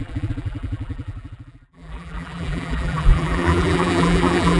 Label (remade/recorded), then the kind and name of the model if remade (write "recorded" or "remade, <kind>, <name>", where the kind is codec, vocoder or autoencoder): remade, vocoder, BigVGAN v2